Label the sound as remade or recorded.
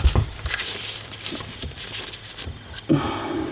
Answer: recorded